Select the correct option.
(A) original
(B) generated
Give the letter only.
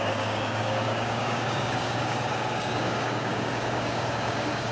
B